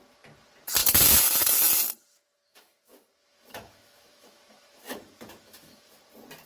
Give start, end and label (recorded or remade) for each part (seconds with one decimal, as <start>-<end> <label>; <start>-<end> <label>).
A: 0.0-2.1 recorded; 2.1-6.0 remade; 6.0-6.5 recorded